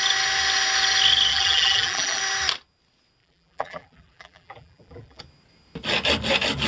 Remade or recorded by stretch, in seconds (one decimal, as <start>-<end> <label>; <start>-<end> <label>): 0.0-1.3 recorded; 1.3-2.2 remade; 2.2-3.2 recorded; 3.2-5.2 remade; 5.2-6.7 recorded